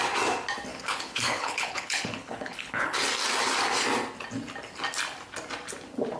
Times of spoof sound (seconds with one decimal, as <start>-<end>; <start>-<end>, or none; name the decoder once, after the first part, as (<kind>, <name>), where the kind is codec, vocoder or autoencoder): 0.7-3.0 (codec, HILCodec)

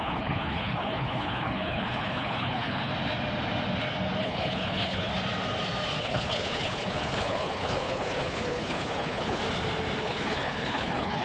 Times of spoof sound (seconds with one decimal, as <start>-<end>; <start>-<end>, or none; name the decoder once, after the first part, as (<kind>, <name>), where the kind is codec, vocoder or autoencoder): 0.0-2.9 (codec, HILCodec); 4.2-5.1; 6.0-9.4; 10.0-11.2

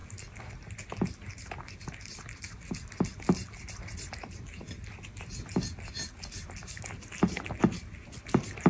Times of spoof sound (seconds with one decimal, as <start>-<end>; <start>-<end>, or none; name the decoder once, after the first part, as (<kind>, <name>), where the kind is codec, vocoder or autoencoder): none

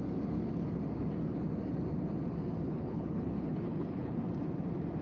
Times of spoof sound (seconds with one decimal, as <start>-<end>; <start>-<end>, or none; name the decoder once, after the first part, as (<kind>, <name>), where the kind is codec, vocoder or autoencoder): 2.7-4.2 (codec, HILCodec)

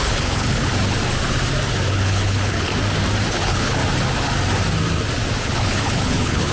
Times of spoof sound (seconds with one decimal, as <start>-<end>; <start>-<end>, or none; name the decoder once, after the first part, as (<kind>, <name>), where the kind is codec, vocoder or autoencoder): 0.0-0.7 (codec, HILCodec); 1.9-2.7; 3.3-3.8; 5.4-6.5

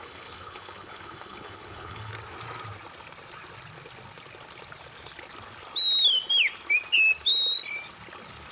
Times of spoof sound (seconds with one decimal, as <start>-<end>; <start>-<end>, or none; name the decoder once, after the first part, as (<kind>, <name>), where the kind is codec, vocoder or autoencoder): 0.0-2.1 (codec, HILCodec)